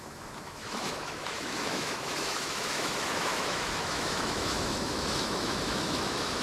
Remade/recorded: remade